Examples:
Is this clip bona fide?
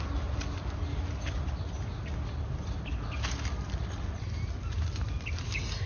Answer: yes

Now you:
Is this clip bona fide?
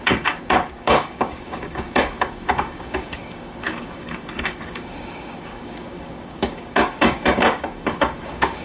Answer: no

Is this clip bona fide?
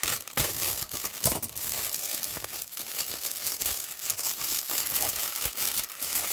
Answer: no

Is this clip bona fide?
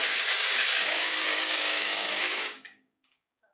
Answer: no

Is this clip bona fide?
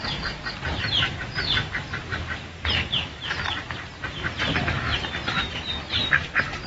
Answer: no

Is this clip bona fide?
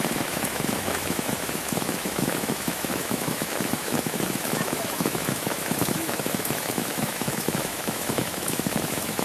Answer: no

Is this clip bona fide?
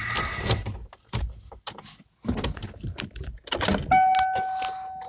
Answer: yes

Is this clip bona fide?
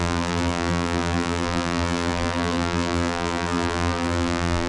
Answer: no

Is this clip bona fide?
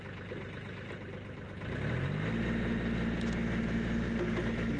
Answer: yes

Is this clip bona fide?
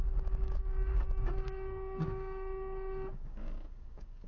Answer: no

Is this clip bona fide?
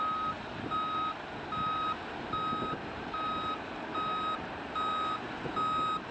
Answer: yes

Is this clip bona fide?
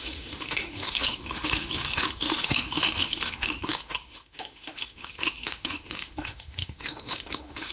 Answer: no